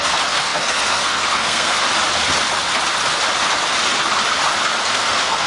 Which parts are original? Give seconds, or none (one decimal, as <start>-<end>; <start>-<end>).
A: 1.8-4.9